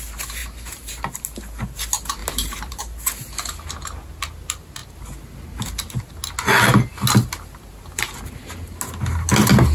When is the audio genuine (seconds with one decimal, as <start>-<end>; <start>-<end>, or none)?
0.0-0.4; 1.0-2.2; 2.8-9.7